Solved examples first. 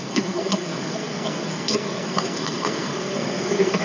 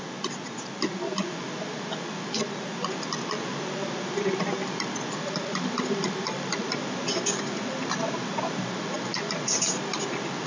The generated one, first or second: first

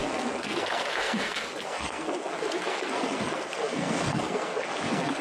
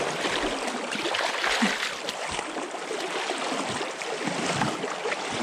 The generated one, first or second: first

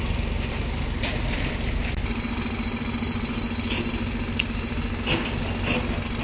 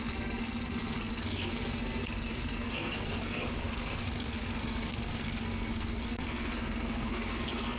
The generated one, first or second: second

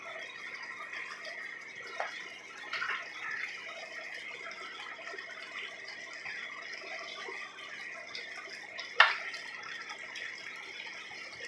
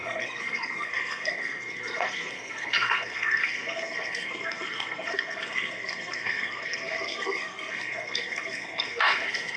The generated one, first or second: second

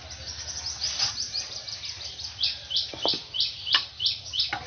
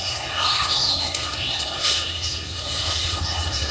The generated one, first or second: second